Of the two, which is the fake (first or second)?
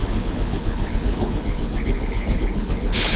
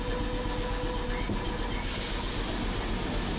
first